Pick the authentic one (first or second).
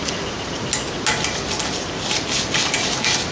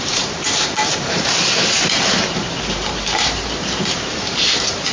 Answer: first